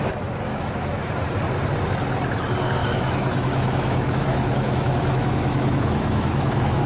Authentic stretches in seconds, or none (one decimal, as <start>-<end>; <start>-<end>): 0.0-0.5; 1.1-2.8